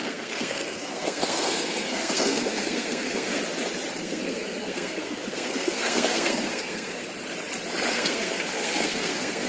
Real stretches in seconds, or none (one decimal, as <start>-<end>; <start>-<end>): 3.4-4.0; 7.0-7.9